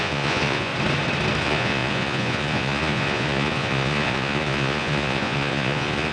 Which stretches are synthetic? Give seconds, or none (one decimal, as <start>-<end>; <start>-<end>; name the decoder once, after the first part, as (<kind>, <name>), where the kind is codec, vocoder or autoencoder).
0.0-0.7 (vocoder, Vocos); 1.4-6.1